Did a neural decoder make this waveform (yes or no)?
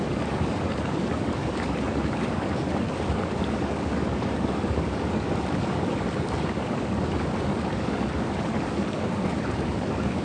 yes